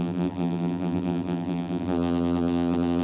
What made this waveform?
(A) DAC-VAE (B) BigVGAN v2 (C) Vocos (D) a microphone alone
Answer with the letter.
B